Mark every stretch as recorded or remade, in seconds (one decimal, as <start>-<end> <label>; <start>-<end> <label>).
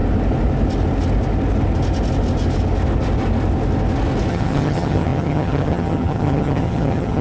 0.0-4.3 recorded; 4.3-7.2 remade